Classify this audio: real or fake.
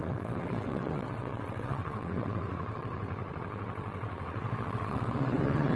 fake